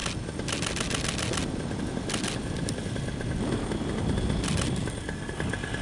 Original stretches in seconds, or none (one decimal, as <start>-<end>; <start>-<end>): 0.0-5.8